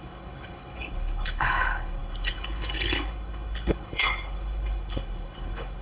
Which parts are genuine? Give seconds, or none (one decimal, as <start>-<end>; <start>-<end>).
none